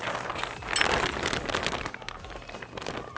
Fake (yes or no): no